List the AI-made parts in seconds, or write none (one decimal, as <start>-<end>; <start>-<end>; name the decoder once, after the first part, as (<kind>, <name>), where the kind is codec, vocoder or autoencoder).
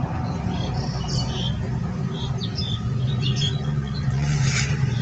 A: 2.6-5.0 (vocoder, Vocos)